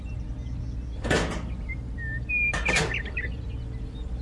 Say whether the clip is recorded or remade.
recorded